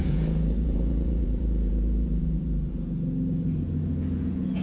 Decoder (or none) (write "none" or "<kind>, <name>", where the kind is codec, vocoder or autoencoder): vocoder, Vocos